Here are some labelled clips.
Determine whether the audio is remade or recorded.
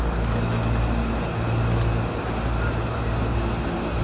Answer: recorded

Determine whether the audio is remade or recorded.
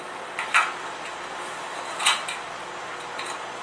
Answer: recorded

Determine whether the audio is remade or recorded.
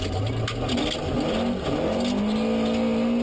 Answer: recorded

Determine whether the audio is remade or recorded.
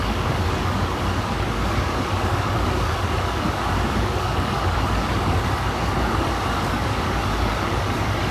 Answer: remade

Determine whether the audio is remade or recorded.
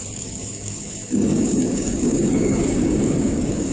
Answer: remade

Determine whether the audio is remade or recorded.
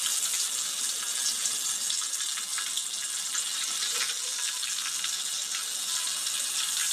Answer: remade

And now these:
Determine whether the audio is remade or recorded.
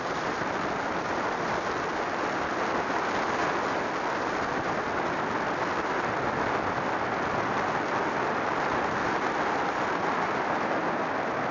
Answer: recorded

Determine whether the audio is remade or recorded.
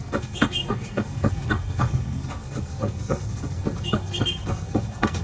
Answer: remade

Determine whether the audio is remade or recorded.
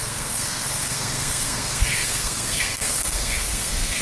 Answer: remade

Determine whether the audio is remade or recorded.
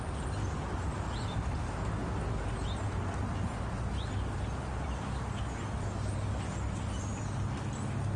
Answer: recorded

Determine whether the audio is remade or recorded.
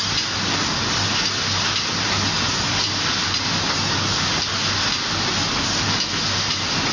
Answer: recorded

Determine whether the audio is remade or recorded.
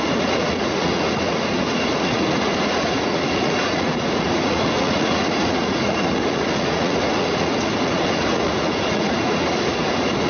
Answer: remade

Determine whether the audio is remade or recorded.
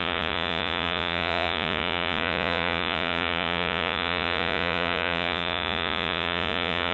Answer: remade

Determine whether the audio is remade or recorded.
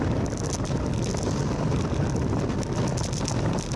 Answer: recorded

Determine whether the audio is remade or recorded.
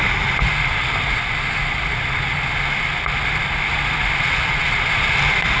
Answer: recorded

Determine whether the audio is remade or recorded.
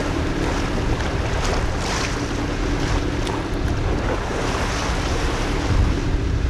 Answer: recorded